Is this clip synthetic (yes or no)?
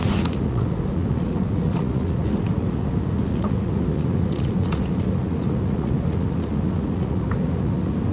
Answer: yes